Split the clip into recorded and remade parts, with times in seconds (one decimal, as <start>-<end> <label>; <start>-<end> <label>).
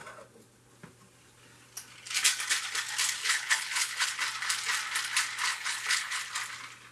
0.0-3.2 recorded; 3.2-4.1 remade; 4.1-5.5 recorded; 5.5-6.2 remade; 6.2-6.9 recorded